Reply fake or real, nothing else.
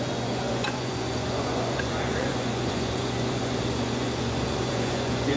fake